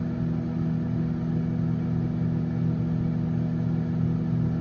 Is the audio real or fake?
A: real